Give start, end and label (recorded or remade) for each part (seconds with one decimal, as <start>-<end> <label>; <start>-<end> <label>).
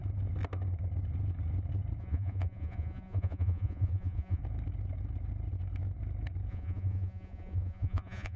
0.0-2.0 recorded; 2.0-4.4 remade; 4.4-6.5 recorded; 6.5-8.4 remade